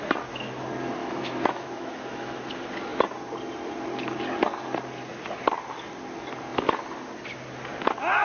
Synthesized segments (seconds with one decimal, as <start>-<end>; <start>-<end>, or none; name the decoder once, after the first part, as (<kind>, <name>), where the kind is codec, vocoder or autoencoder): 1.0-2.5 (autoencoder, DAC-VAE)